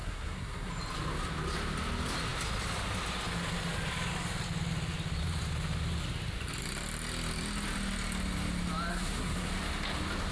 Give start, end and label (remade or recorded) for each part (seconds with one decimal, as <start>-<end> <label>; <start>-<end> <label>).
0.0-0.7 remade; 0.7-8.9 recorded; 8.9-9.5 remade; 9.5-10.3 recorded